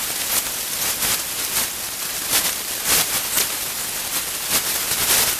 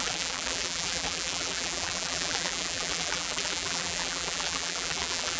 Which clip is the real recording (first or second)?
first